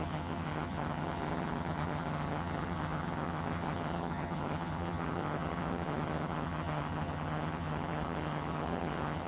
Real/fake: fake